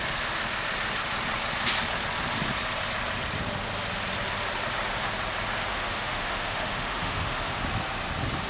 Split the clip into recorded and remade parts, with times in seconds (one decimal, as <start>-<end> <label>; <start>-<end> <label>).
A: 0.0-5.7 recorded; 5.7-7.6 remade; 7.6-8.5 recorded